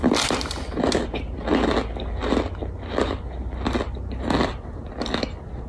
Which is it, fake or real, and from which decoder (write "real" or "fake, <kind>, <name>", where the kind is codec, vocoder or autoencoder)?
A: real